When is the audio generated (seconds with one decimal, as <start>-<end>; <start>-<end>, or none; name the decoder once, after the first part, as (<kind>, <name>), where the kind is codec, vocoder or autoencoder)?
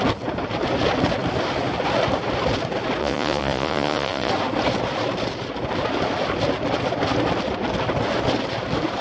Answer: 3.0-4.3 (vocoder, Vocos)